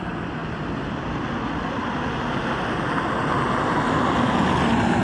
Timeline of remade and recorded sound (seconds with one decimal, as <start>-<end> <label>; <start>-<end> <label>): 0.0-5.0 recorded